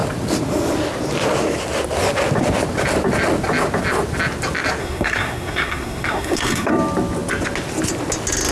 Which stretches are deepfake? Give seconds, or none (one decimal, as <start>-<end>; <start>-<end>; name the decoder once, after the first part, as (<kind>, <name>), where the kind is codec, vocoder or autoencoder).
4.8-6.7 (codec, SNAC)